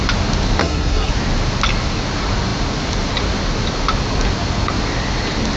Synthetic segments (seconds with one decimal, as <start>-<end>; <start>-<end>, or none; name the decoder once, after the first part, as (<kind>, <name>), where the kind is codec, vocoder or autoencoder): 0.6-1.1 (codec, SNAC)